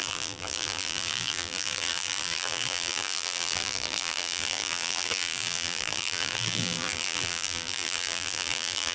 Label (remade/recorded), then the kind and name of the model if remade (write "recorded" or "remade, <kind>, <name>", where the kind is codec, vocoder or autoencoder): remade, vocoder, BigVGAN v2